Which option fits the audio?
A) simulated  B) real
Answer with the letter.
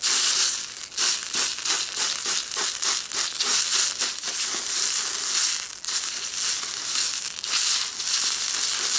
B